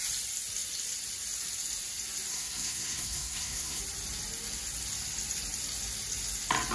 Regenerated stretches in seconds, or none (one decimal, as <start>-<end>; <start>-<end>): 2.3-3.8